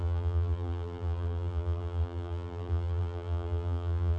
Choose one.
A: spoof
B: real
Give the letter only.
A